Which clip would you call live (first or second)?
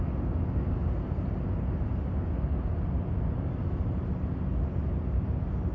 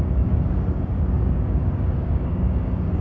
first